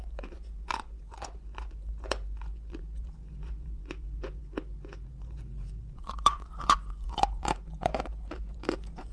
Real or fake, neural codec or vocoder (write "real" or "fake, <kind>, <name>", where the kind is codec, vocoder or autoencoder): fake, vocoder, Vocos